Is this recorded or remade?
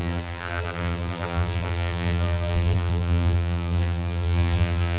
remade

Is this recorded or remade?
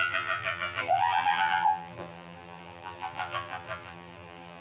remade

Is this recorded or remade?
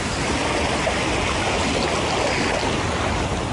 recorded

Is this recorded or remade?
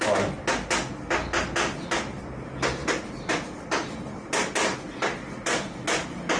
recorded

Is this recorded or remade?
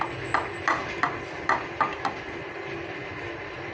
recorded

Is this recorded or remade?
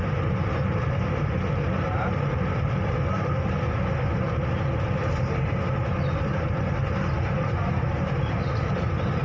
remade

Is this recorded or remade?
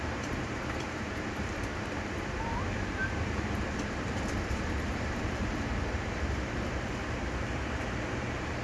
remade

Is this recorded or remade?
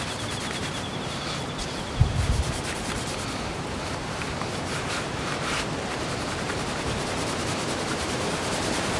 remade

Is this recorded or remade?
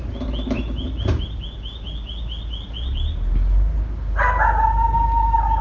recorded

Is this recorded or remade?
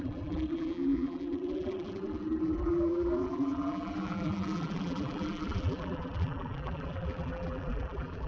remade